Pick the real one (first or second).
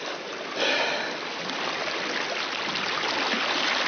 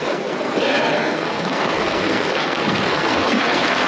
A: first